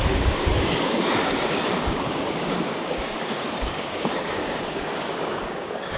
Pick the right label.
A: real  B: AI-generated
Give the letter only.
B